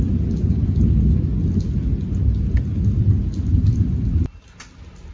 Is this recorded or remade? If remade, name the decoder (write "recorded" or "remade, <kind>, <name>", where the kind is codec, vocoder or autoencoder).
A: recorded